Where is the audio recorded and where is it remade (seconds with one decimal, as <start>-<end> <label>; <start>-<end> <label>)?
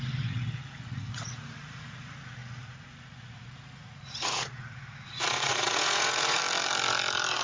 0.0-6.4 remade; 6.4-7.4 recorded